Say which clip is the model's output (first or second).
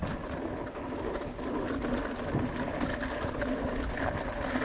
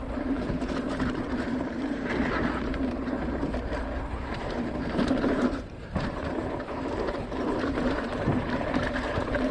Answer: second